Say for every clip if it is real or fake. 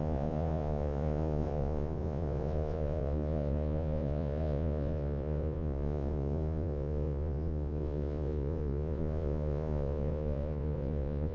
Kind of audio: fake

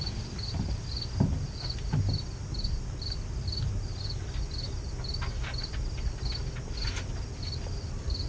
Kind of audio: real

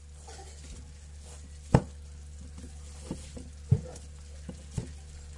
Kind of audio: real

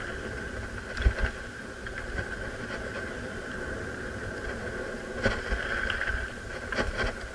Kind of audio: real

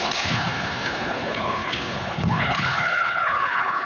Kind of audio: fake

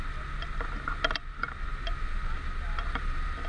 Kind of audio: real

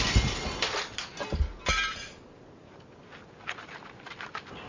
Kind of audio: real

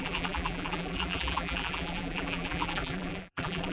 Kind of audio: fake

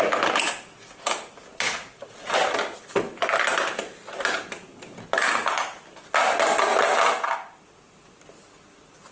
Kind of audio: real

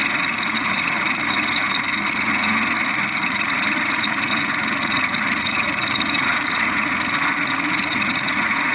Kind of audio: fake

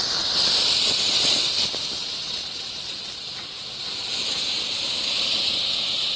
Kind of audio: real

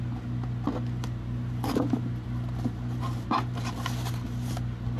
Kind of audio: real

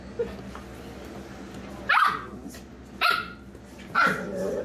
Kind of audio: real